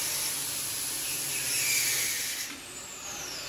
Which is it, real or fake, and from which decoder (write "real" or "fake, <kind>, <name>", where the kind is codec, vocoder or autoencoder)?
real